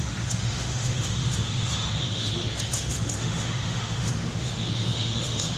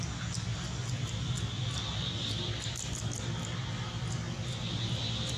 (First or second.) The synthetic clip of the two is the first